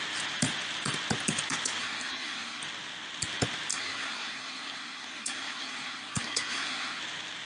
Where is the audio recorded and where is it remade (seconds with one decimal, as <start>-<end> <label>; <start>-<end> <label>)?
0.0-1.8 recorded; 1.8-2.6 remade; 2.6-3.7 recorded; 3.7-7.0 remade; 7.0-7.5 recorded